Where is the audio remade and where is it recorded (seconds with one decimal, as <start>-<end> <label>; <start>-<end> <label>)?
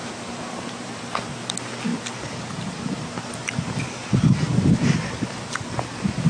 0.0-1.2 remade; 1.2-6.3 recorded